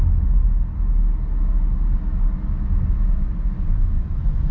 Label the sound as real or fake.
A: real